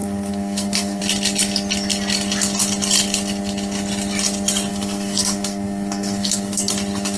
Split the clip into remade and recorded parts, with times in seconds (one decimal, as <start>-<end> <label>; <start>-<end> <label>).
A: 0.0-1.0 remade; 1.0-4.7 recorded; 4.7-6.7 remade; 6.7-7.2 recorded